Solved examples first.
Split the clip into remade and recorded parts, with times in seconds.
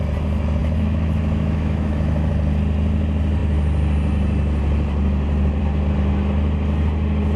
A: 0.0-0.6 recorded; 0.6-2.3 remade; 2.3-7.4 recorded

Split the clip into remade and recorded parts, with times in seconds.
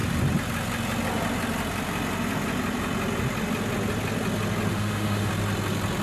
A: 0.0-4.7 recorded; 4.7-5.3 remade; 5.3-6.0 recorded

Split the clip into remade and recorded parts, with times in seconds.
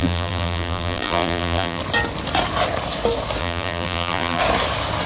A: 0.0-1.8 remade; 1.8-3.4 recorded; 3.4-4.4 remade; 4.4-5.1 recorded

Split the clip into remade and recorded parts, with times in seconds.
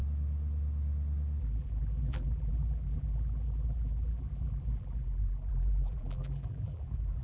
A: 0.0-1.4 recorded; 1.4-7.2 remade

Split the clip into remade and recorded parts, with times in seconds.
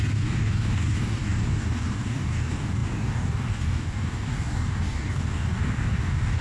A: 0.0-6.4 remade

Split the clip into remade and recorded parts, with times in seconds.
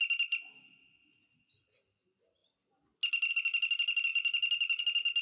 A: 0.0-5.2 recorded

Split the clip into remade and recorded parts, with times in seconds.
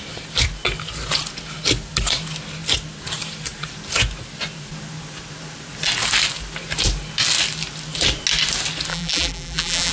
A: 0.0-8.9 recorded; 8.9-9.9 remade